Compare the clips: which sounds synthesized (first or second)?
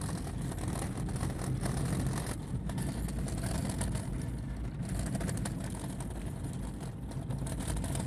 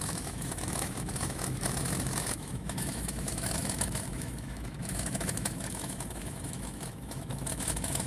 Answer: second